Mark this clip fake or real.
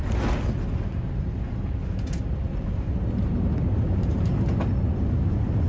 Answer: real